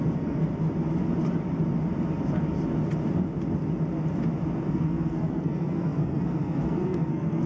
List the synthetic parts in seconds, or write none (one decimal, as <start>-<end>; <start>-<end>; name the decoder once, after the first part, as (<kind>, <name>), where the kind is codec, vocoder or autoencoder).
0.0-0.5 (codec, SNAC); 4.7-7.5

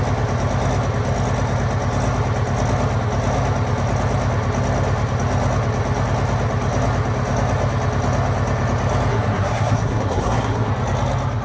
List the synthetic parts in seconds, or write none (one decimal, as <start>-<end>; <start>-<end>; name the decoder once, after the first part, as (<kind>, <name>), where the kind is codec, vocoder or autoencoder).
9.1-10.7 (codec, SNAC)